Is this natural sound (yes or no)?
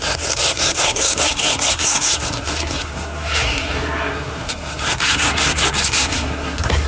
no